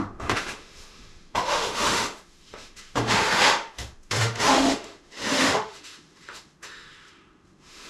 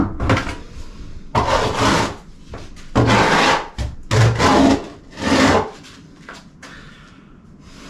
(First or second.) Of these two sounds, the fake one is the first